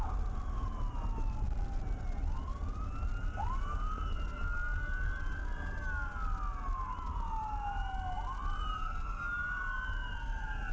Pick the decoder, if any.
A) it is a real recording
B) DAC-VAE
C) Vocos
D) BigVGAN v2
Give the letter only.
A